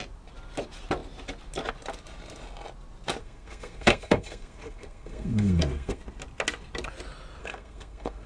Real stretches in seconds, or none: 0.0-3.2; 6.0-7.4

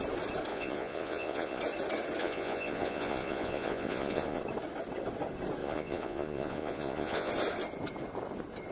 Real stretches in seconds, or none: 0.0-0.5; 1.6-2.2; 4.4-5.6; 7.3-8.7